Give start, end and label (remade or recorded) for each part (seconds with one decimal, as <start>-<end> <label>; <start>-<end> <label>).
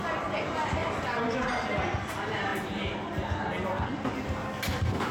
0.0-5.1 recorded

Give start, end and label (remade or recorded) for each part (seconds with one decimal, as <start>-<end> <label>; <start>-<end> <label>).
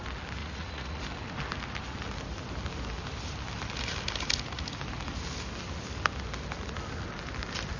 0.0-0.4 recorded; 0.4-1.0 remade; 1.0-7.8 recorded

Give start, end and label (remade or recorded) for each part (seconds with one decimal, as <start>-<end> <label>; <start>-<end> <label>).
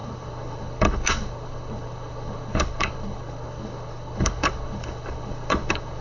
0.0-6.0 remade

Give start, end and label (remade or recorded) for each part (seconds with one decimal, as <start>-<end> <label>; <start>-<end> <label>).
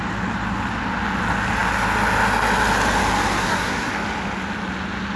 0.0-3.4 recorded; 3.4-3.9 remade; 3.9-5.2 recorded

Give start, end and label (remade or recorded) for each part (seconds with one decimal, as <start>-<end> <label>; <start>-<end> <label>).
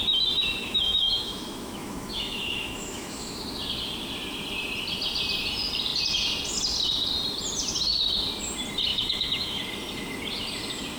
0.0-0.6 recorded; 0.6-3.4 remade; 3.4-8.9 recorded; 8.9-9.6 remade; 9.6-11.0 recorded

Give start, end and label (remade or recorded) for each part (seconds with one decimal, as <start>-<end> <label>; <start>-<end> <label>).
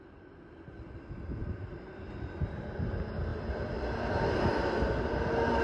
0.0-5.6 recorded